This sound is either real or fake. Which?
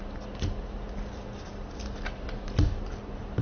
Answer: real